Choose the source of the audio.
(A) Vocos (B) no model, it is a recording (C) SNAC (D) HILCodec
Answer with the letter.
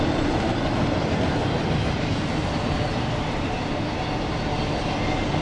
B